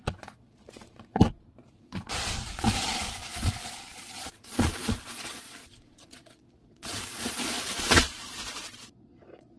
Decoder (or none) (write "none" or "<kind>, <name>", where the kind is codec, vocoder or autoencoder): vocoder, Vocos